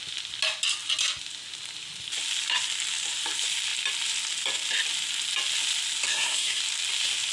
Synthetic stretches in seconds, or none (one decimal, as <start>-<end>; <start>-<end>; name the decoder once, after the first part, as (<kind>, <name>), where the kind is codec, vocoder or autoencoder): 6.1-6.6 (codec, SNAC)